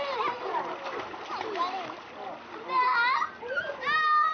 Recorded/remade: recorded